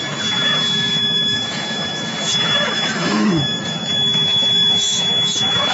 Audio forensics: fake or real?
fake